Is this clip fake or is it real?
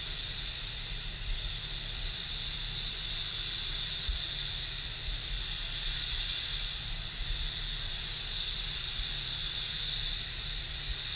fake